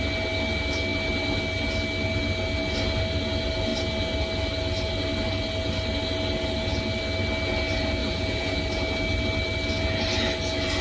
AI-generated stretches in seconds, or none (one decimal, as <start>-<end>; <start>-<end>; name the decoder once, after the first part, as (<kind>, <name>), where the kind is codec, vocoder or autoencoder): 8.0-8.6 (vocoder, Vocos)